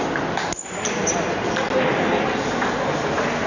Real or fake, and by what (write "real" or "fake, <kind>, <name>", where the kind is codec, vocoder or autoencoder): real